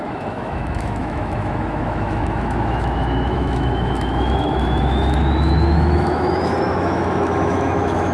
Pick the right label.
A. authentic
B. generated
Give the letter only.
B